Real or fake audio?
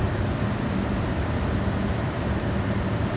fake